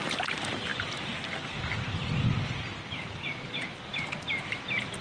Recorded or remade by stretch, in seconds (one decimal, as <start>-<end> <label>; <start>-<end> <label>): 0.0-5.0 remade